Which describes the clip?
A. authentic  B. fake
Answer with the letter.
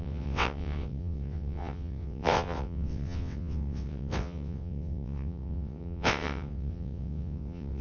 B